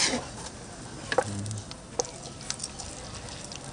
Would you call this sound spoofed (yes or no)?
no